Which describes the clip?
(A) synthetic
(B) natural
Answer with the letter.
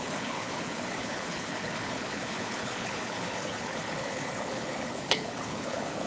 A